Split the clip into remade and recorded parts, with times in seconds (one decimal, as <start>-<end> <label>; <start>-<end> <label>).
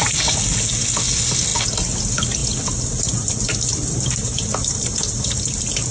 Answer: 0.0-5.9 recorded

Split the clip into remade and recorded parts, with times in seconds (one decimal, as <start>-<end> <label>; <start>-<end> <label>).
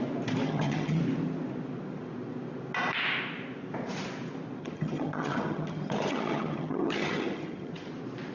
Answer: 0.0-0.4 recorded; 0.4-1.0 remade; 1.0-4.6 recorded; 4.6-7.9 remade; 7.9-8.3 recorded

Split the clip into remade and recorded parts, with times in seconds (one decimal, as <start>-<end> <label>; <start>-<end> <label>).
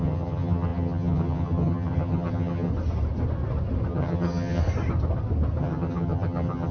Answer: 0.0-2.7 remade; 2.7-3.9 recorded; 3.9-4.6 remade; 4.6-5.6 recorded; 5.6-6.7 remade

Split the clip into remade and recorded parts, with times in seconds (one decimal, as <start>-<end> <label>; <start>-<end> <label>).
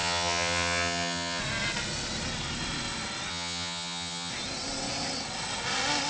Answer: 0.0-1.4 remade; 1.4-3.3 recorded; 3.3-4.3 remade; 4.3-6.1 recorded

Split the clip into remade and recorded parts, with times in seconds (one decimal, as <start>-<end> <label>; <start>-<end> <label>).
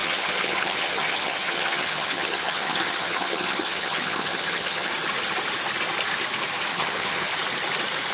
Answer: 0.0-4.9 remade; 4.9-6.7 recorded; 6.7-7.3 remade; 7.3-8.1 recorded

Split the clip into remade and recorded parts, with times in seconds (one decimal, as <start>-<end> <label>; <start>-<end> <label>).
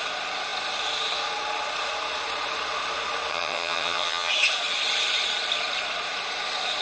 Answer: 0.0-3.3 recorded; 3.3-4.3 remade; 4.3-6.8 recorded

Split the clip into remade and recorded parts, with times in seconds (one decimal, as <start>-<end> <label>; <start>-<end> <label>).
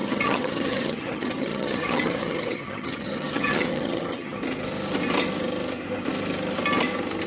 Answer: 0.0-4.4 remade; 4.4-7.3 recorded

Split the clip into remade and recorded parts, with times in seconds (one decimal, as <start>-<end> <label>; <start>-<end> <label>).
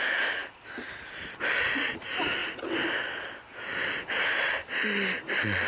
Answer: 0.0-5.7 recorded